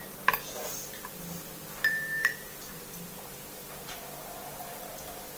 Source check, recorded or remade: remade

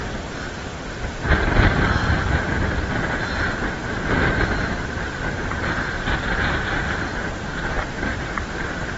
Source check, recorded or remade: remade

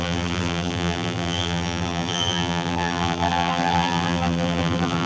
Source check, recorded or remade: remade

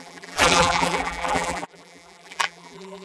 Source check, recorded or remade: remade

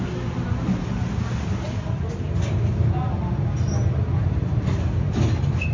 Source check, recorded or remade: recorded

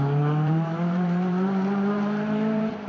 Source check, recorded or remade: remade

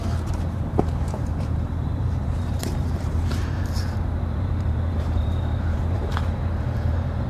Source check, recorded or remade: remade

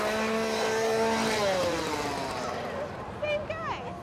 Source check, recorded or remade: recorded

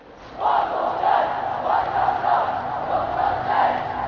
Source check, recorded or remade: recorded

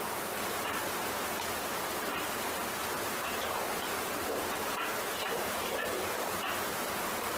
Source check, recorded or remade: remade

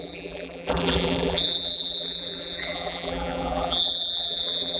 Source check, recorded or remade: remade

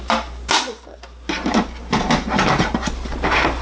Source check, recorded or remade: recorded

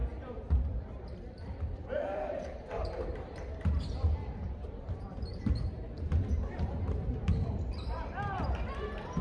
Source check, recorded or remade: remade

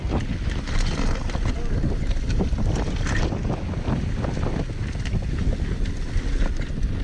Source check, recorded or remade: recorded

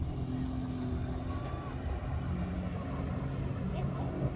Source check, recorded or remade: recorded